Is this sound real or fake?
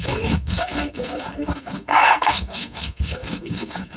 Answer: fake